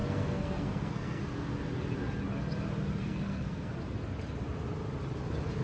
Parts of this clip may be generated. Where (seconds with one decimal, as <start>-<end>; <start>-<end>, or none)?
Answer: 0.0-1.2; 3.0-3.7